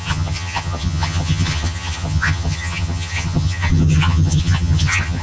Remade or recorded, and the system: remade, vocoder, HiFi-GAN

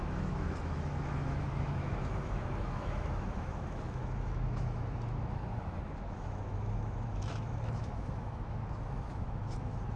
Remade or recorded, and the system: remade, autoencoder, DAC-VAE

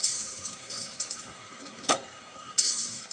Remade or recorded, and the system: remade, codec, SNAC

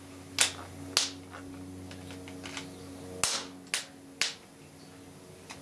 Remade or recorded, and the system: recorded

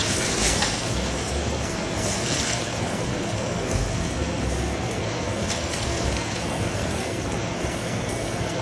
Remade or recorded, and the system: remade, codec, SNAC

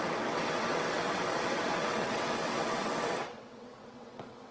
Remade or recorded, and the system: remade, vocoder, WaveNeXt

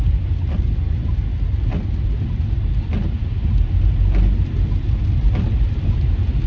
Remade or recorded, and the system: recorded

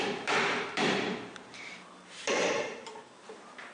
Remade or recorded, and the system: remade, vocoder, BigVGAN v2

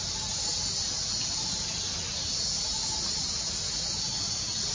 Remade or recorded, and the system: recorded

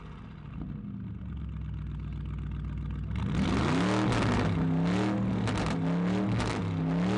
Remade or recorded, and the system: recorded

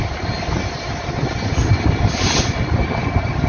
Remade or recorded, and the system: recorded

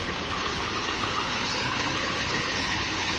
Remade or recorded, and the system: remade, codec, HILCodec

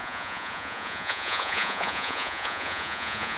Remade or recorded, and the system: remade, vocoder, Vocos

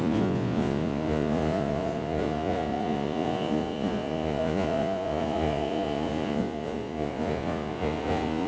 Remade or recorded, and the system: remade, vocoder, Vocos